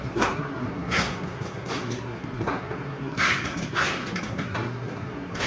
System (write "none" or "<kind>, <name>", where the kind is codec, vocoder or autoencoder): codec, SNAC